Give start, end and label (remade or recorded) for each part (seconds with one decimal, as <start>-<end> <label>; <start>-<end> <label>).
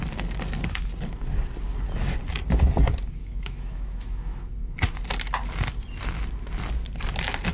0.0-3.2 recorded; 3.2-4.5 remade; 4.5-7.5 recorded